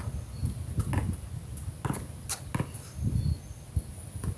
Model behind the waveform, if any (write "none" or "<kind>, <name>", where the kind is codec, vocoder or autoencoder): none